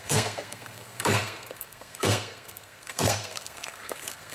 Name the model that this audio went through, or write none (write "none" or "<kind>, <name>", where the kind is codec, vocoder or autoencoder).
codec, SNAC